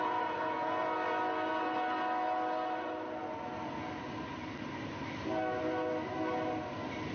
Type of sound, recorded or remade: recorded